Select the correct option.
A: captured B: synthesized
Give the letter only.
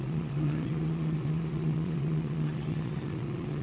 B